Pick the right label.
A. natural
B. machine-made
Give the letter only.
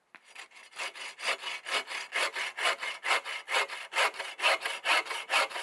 A